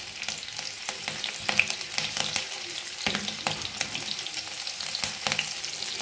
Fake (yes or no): no